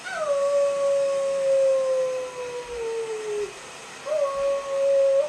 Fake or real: real